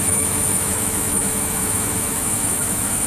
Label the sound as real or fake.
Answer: fake